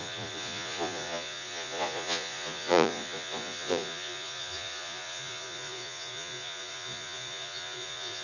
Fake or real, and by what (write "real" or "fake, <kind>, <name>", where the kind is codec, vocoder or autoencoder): fake, vocoder, Vocos